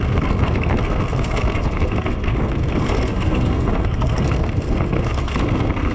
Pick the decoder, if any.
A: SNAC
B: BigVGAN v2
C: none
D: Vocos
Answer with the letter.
A